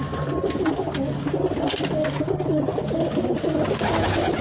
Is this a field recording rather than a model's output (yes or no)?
yes